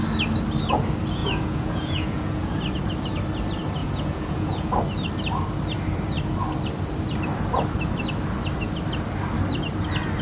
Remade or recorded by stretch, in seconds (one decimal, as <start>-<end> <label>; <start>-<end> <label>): 0.0-1.2 recorded; 1.2-2.6 remade; 2.6-3.8 recorded; 3.8-4.7 remade; 4.7-10.2 recorded